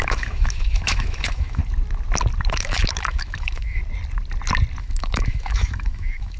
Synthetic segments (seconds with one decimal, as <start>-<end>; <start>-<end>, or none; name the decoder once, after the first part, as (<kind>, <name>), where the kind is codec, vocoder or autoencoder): 0.0-1.6 (autoencoder, DAC-VAE); 2.5-3.8; 4.8-6.4